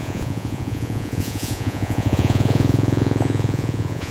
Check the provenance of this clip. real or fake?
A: fake